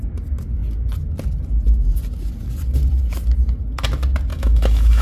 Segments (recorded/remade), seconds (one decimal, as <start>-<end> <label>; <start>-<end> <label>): 0.0-4.3 recorded; 4.3-5.0 remade